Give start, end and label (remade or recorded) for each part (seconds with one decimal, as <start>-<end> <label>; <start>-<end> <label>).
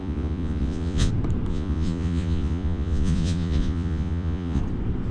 0.0-1.1 remade; 1.1-1.5 recorded; 1.5-4.6 remade; 4.6-5.1 recorded